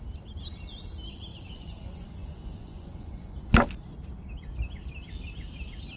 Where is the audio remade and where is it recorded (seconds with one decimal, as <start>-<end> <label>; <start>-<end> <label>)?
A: 0.0-1.3 recorded; 1.3-3.6 remade; 3.6-6.0 recorded